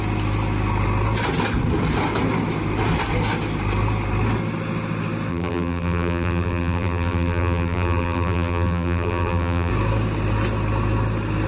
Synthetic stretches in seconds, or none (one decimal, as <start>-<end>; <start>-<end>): 5.3-9.7